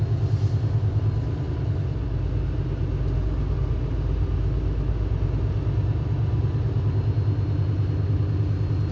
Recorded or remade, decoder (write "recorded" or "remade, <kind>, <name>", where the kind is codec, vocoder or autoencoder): recorded